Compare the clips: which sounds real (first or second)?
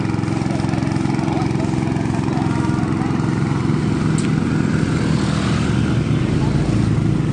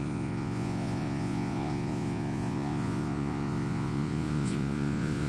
first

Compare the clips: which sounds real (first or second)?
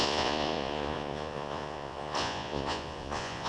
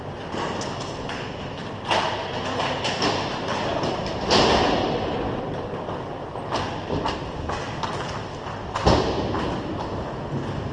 second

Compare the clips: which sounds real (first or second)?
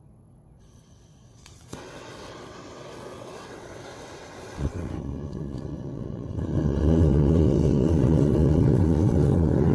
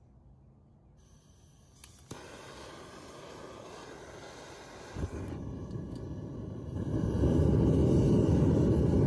second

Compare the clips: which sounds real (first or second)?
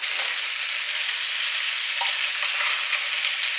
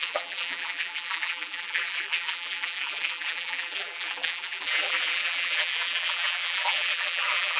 first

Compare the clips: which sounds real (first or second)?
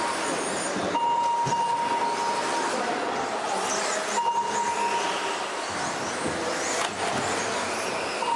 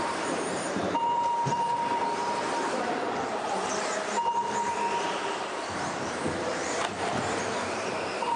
first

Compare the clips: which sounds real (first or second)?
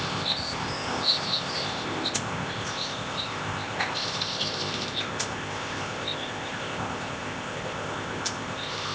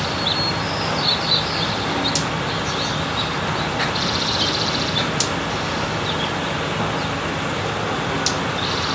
second